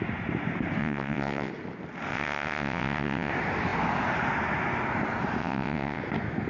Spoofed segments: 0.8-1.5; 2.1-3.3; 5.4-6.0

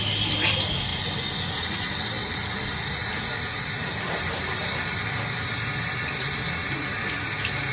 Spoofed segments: 3.0-4.6

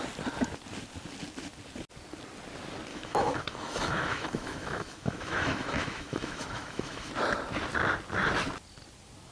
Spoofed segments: 2.9-7.1